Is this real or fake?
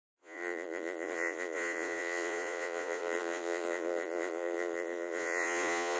fake